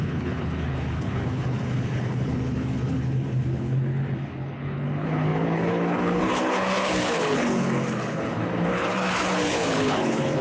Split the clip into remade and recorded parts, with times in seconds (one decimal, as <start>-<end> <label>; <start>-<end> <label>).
0.0-10.4 remade